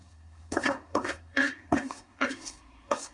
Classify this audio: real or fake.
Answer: fake